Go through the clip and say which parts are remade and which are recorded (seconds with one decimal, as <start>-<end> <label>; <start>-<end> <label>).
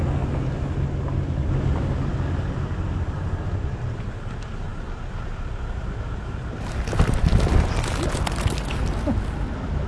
0.0-9.9 recorded